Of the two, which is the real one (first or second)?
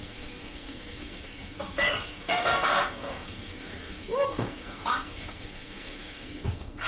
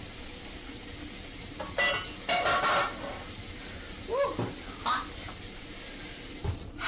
second